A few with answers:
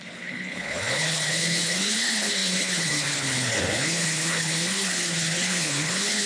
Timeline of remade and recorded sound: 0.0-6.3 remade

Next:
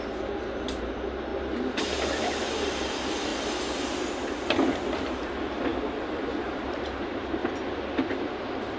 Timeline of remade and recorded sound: 0.0-1.3 remade; 1.3-1.8 recorded; 1.8-3.3 remade; 3.3-5.1 recorded; 5.1-7.4 remade; 7.4-8.8 recorded

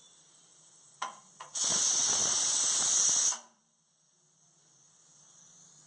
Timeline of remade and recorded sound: 0.0-0.5 recorded; 0.5-3.6 remade; 3.6-5.9 recorded

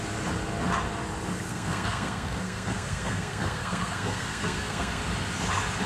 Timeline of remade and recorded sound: 0.0-1.5 recorded; 1.5-5.0 remade; 5.0-5.9 recorded

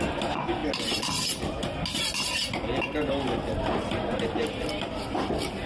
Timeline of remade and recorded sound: 0.0-5.7 recorded

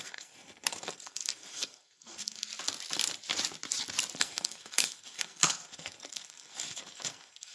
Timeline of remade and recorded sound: 0.0-2.5 remade; 2.5-4.2 recorded; 4.2-7.5 remade

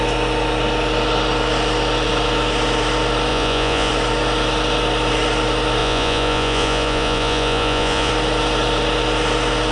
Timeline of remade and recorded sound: 0.0-3.3 recorded; 3.3-3.9 remade; 3.9-5.8 recorded; 5.8-8.1 remade; 8.1-9.7 recorded